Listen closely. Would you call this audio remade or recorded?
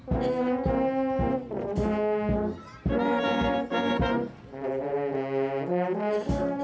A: recorded